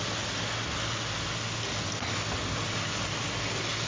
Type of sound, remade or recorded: recorded